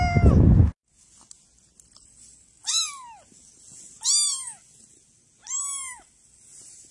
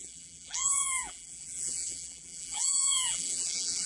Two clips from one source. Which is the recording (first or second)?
first